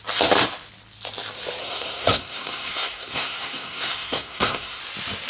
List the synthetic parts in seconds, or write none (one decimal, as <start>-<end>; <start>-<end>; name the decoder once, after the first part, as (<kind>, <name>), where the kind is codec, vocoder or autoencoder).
1.6-4.8 (codec, SNAC)